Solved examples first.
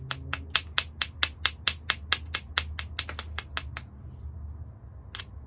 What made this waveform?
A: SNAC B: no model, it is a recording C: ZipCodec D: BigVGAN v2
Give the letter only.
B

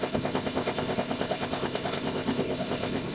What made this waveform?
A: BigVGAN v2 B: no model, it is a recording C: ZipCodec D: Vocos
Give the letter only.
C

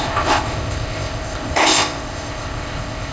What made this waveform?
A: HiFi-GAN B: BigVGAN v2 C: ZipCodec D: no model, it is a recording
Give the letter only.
C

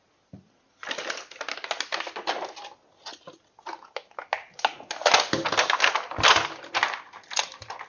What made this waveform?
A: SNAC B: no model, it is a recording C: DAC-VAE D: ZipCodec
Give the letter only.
B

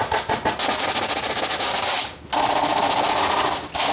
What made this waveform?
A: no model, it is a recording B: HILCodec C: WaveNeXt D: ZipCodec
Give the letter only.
A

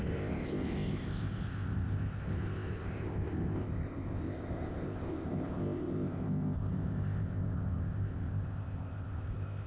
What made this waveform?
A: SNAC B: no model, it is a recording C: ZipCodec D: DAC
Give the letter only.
C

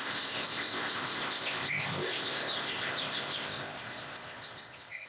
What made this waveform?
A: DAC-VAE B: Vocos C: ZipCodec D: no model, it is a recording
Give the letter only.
C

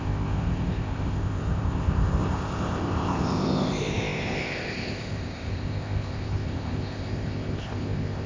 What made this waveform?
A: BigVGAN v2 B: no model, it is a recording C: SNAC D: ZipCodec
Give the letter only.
D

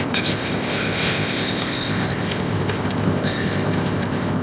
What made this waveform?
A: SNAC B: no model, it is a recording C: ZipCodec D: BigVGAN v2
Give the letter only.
C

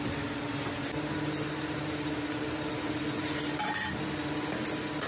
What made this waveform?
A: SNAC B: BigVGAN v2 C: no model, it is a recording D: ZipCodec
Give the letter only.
C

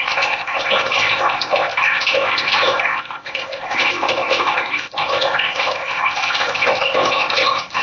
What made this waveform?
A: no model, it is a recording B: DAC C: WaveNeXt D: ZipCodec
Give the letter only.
D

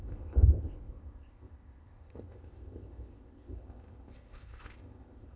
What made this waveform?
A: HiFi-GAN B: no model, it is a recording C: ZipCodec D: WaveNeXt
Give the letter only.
C